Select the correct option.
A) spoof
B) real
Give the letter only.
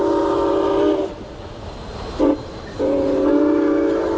B